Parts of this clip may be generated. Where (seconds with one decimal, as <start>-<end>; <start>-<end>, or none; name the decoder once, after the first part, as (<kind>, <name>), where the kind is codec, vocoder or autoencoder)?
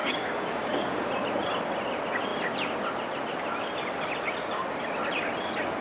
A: 0.0-1.1 (codec, DAC)